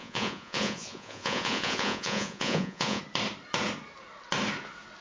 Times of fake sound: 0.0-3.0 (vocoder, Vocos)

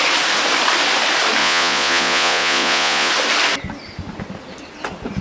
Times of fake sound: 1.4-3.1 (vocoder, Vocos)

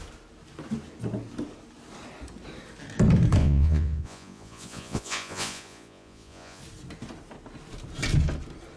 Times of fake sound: 3.4-6.6 (vocoder, Vocos)